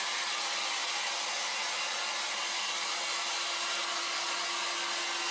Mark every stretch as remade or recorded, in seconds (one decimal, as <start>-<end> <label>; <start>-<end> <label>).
0.0-5.3 recorded